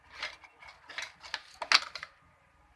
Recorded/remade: recorded